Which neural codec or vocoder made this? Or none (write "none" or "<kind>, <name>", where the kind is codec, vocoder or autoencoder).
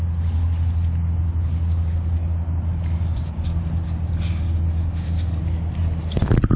none